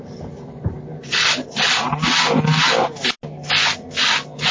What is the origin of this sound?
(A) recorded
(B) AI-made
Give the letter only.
A